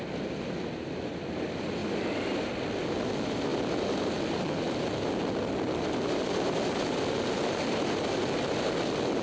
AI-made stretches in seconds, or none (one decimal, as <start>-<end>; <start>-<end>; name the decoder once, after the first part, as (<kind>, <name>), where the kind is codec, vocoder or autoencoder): none